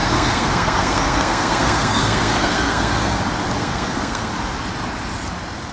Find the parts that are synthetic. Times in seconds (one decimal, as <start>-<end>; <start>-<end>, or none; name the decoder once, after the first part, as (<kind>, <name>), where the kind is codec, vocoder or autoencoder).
0.0-3.2 (codec, SNAC); 3.6-4.3